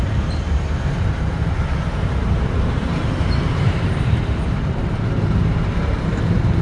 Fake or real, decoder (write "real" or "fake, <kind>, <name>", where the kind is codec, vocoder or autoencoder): fake, vocoder, BigVGAN v2